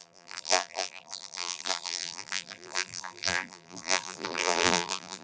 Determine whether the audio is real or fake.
fake